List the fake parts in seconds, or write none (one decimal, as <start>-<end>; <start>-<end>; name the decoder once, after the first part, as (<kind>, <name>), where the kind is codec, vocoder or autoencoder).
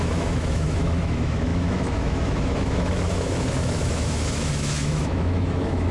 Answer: 0.0-5.9 (autoencoder, DAC-VAE)